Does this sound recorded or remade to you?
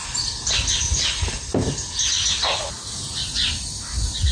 recorded